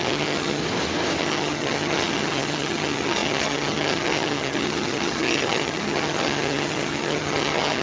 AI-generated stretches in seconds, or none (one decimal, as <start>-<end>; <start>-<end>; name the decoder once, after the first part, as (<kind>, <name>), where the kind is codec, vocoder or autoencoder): 0.0-0.6 (vocoder, HiFi-GAN); 1.2-7.8